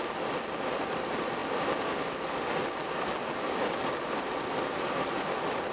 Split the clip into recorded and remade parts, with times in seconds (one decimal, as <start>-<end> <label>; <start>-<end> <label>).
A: 0.0-5.7 recorded